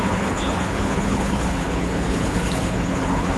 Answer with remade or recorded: remade